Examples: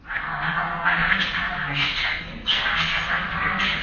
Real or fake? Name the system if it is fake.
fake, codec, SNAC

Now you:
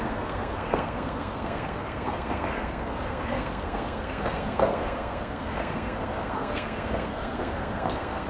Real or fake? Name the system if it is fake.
fake, codec, SNAC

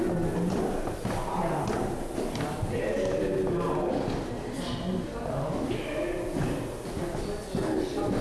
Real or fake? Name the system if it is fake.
real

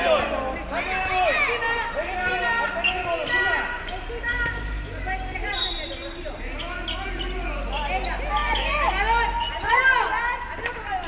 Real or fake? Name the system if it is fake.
real